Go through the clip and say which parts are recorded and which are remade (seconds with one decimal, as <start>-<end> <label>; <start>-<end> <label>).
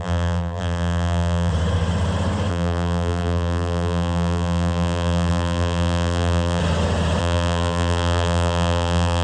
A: 0.0-1.5 remade; 1.5-2.5 recorded; 2.5-6.6 remade; 6.6-7.2 recorded; 7.2-9.2 remade